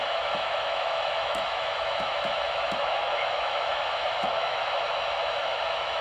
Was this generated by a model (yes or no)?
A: yes